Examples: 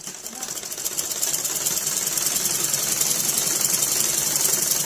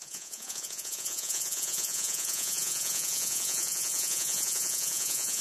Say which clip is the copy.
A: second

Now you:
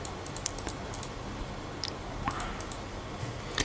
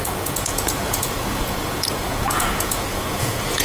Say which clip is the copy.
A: second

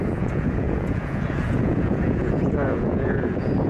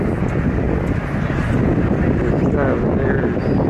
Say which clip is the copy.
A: first